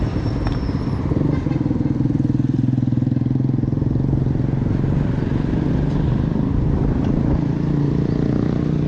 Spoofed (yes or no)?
yes